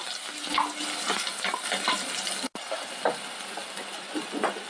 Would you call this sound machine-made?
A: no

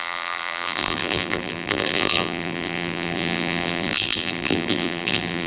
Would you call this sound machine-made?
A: yes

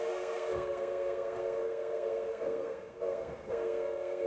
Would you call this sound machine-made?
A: yes